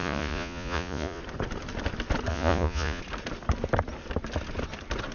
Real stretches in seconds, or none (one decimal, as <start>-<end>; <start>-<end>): 1.2-2.3; 3.0-5.1